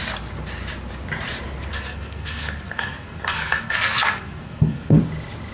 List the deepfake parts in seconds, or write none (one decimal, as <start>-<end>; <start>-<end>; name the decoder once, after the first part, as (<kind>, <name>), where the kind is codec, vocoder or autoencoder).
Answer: 1.7-5.0 (codec, SNAC)